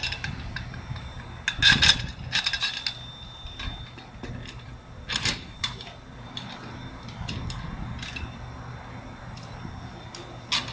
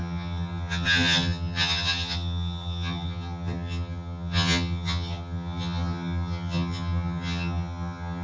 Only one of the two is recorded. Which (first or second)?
first